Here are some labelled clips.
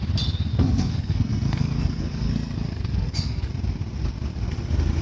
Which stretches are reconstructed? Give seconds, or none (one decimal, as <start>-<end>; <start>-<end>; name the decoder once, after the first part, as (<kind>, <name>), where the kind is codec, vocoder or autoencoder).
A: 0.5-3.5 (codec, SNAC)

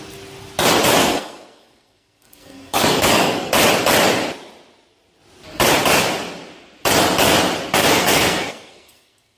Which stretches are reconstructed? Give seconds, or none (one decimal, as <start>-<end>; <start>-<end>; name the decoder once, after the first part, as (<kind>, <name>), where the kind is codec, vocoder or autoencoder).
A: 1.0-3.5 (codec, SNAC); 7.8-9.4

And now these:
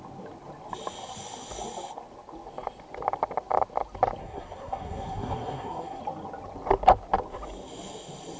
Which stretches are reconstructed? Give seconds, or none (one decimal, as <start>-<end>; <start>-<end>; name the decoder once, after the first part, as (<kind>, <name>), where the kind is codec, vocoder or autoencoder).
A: 4.2-6.0 (codec, SNAC)